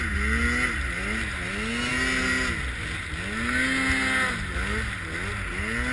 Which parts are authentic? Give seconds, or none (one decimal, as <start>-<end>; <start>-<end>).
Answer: 0.0-5.9